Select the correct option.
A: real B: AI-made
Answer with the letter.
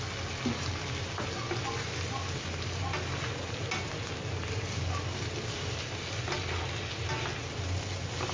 A